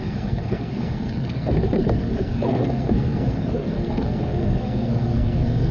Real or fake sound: fake